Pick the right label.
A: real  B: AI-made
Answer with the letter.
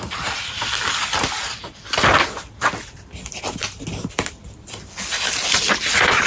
B